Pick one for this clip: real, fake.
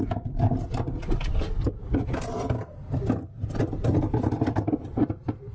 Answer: real